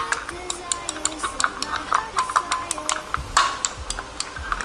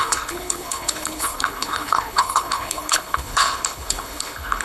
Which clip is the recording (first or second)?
first